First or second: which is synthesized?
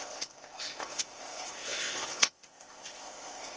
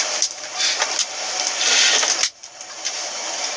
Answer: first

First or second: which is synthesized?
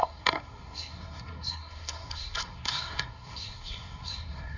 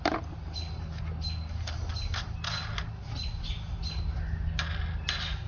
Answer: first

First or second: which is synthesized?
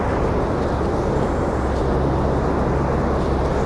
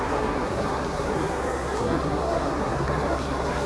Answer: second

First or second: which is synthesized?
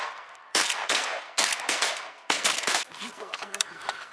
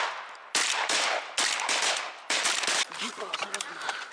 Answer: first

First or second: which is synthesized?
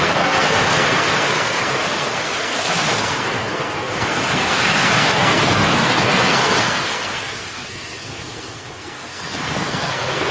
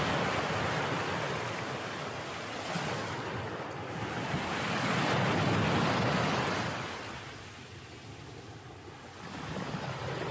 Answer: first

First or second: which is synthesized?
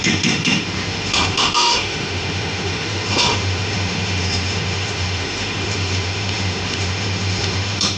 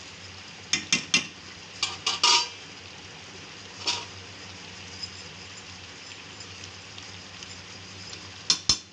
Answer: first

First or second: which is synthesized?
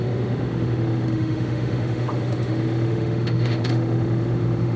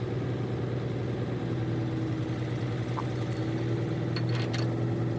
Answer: first